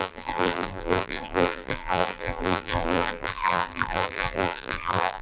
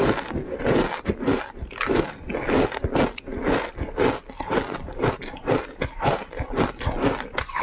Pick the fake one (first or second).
first